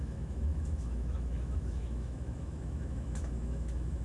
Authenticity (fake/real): fake